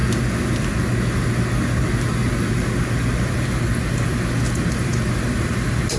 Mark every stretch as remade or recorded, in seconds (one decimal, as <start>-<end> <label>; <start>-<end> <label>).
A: 0.0-6.0 recorded